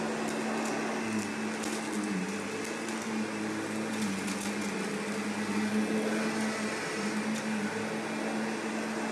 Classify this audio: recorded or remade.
recorded